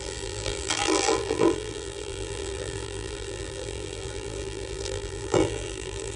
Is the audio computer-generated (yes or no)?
yes